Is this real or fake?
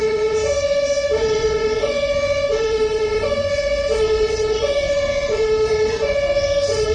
fake